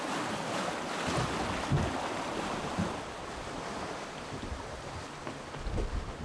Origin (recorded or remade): recorded